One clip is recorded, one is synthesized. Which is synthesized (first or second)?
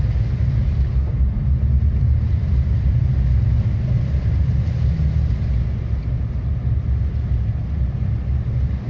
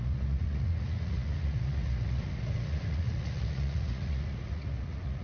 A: second